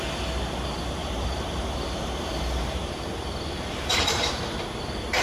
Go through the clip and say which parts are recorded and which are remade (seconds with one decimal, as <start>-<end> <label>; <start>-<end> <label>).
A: 0.0-1.0 recorded; 1.0-4.1 remade; 4.1-5.2 recorded